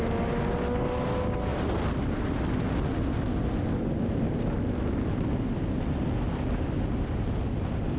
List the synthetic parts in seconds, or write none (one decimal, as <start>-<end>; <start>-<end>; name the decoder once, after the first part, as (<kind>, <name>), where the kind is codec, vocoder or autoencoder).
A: none